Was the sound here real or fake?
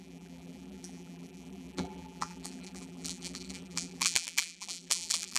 fake